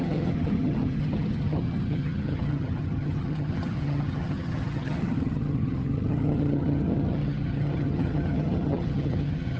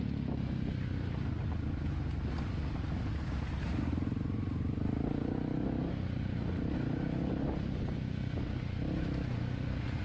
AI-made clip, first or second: first